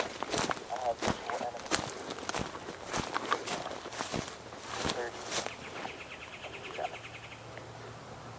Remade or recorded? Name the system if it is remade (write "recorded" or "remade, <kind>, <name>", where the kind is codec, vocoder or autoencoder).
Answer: recorded